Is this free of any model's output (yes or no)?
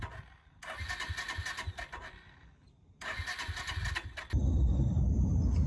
yes